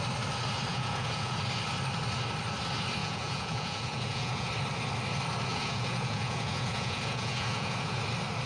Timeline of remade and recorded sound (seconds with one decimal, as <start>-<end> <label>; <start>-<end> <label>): 0.0-0.7 recorded; 0.7-1.3 remade; 1.3-3.0 recorded; 3.0-4.5 remade; 4.5-5.5 recorded; 5.5-8.0 remade; 8.0-8.5 recorded